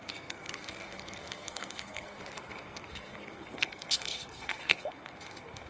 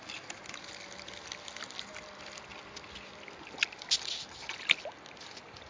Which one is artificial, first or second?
first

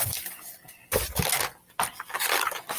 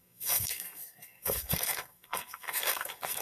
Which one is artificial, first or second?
second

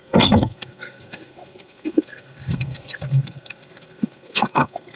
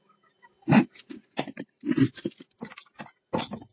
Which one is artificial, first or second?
first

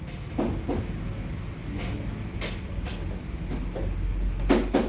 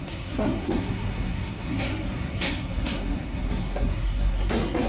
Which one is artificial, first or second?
second